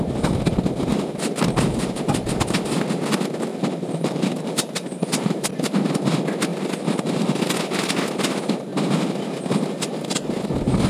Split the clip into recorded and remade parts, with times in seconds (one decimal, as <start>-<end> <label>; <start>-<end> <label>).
0.0-0.9 recorded; 0.9-2.2 remade; 2.2-3.5 recorded; 3.5-5.5 remade; 5.5-6.5 recorded; 6.5-7.4 remade; 7.4-10.9 recorded